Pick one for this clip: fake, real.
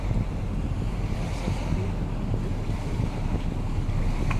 real